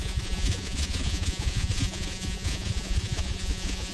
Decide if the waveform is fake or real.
fake